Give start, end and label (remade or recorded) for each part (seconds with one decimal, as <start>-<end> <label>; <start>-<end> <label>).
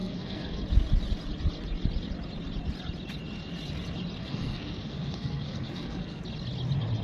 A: 0.0-0.6 remade; 0.6-4.2 recorded; 4.2-6.2 remade; 6.2-7.0 recorded